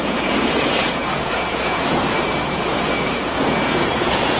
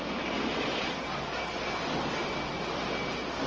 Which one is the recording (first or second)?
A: second